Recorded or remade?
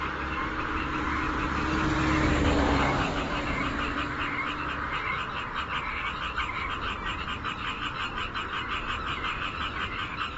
recorded